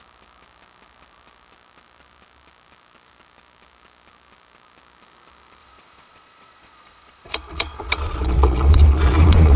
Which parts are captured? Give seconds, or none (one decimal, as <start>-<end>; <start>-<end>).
0.0-5.6